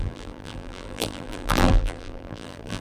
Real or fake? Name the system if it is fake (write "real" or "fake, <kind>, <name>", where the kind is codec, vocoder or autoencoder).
fake, vocoder, BigVGAN v2